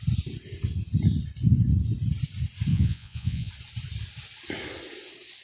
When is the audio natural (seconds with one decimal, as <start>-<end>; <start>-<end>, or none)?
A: 0.0-2.7; 3.5-5.4